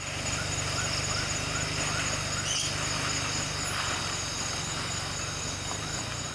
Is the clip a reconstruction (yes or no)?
no